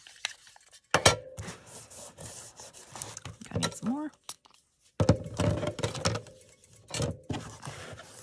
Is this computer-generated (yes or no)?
no